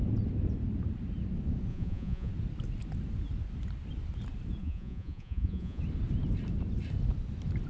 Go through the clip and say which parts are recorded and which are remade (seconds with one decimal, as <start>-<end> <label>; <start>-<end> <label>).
0.0-1.7 recorded; 1.7-2.3 remade; 2.3-4.6 recorded; 4.6-5.8 remade; 5.8-7.7 recorded